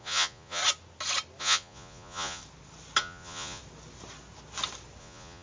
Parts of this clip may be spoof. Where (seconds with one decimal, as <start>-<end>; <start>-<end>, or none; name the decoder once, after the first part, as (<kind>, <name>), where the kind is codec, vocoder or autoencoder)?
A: 0.0-0.6 (vocoder, Vocos); 1.4-2.4; 3.0-3.6; 5.0-5.4